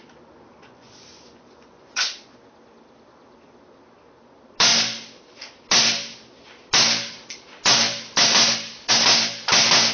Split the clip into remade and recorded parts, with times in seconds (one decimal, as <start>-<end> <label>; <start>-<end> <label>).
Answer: 0.0-0.6 recorded; 0.6-2.1 remade; 2.1-9.9 recorded